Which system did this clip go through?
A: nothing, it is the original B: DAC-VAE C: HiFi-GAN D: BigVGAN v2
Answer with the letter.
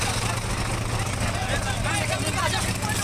A